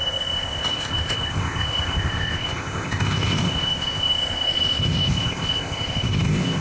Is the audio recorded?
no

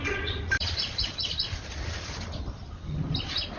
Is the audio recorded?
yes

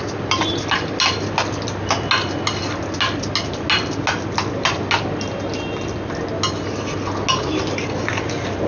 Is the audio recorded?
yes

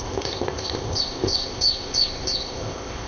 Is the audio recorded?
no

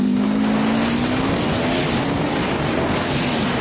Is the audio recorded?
yes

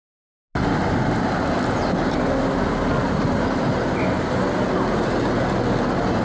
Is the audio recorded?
yes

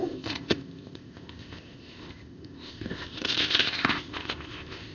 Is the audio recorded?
no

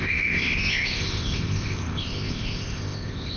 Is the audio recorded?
no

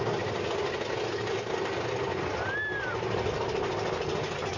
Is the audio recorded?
yes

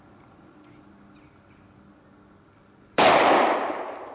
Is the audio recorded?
yes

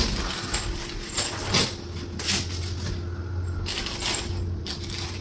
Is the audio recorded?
yes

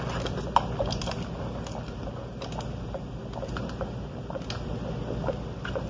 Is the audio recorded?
yes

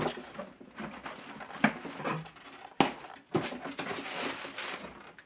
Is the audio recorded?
yes